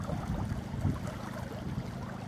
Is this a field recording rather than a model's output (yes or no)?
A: yes